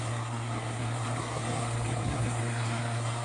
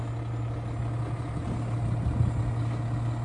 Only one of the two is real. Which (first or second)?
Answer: second